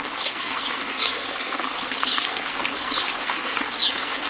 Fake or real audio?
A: fake